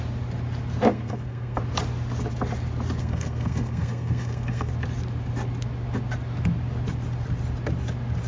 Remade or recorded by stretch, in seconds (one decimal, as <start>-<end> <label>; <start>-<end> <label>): 0.0-0.9 recorded; 0.9-1.6 remade; 1.6-3.0 recorded; 3.0-4.7 remade; 4.7-8.3 recorded